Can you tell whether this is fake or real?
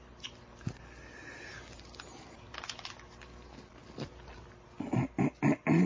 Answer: real